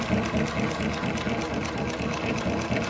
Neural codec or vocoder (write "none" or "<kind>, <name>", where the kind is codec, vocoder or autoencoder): none